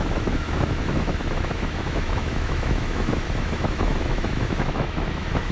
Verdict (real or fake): fake